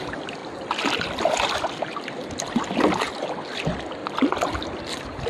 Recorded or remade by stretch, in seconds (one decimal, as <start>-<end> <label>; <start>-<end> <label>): 0.0-5.3 recorded